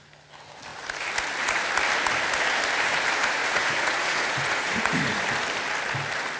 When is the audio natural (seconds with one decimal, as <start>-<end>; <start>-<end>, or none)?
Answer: 0.0-3.4; 5.2-6.4